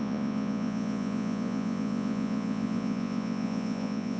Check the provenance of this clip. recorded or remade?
remade